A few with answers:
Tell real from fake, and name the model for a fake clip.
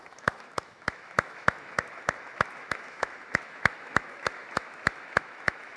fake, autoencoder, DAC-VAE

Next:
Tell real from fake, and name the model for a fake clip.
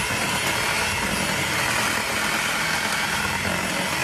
real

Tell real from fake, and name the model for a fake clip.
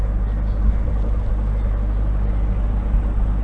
real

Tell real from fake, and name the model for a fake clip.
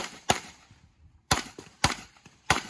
fake, vocoder, BigVGAN v2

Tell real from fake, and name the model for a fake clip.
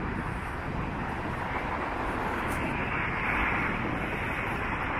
real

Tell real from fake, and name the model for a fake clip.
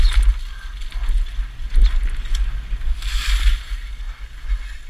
real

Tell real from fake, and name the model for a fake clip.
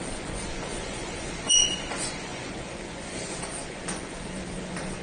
fake, vocoder, Vocos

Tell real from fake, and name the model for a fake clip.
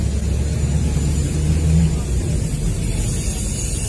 real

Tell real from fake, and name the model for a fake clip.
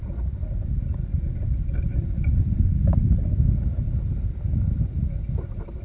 real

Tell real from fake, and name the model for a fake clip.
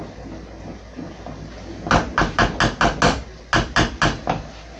real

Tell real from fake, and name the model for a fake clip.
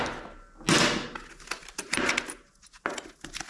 real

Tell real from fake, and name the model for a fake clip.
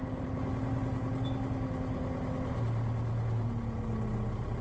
real